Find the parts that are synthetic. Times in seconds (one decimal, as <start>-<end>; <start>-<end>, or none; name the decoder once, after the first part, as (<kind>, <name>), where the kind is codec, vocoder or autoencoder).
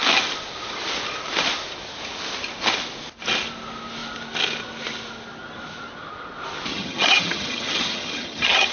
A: 6.7-8.7 (vocoder, HiFi-GAN)